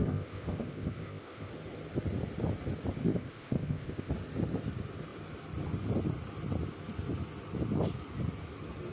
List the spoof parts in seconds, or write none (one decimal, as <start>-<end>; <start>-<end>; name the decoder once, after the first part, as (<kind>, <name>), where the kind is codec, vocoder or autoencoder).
0.0-1.5 (codec, ZipCodec); 3.0-4.1